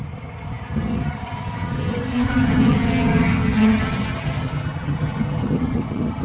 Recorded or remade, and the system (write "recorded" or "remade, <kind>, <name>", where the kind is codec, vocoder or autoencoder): remade, vocoder, HiFi-GAN